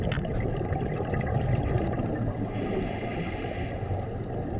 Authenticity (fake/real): real